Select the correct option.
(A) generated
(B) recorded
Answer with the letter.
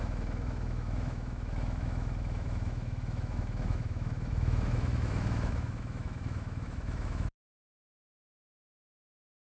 A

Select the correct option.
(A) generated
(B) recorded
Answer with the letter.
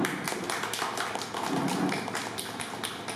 B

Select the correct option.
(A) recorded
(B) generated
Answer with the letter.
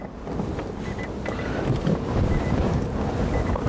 A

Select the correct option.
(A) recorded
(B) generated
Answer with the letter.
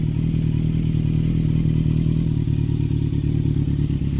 A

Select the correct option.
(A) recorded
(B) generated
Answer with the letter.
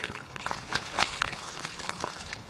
B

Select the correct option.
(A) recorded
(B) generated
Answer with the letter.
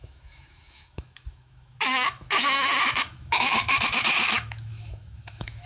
B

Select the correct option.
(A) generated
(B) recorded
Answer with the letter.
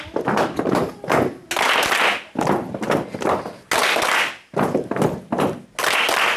B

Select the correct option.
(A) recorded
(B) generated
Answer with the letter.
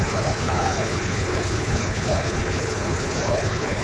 B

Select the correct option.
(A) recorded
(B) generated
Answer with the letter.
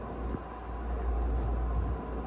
A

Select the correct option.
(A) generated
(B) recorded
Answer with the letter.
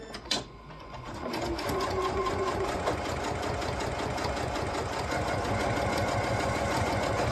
A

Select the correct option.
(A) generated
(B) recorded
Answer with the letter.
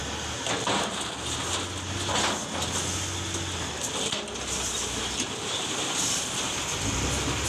B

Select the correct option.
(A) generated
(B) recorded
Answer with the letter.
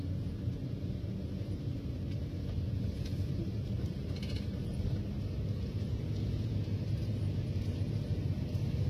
A